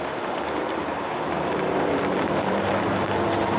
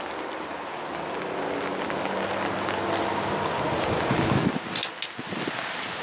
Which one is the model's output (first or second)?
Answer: first